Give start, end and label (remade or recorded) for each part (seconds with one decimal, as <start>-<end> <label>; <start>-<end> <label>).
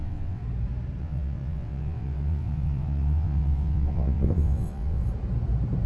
0.0-0.4 remade; 0.4-1.0 recorded; 1.0-5.0 remade; 5.0-5.9 recorded